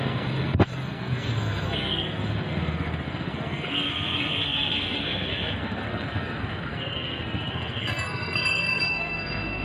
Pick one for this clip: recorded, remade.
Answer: remade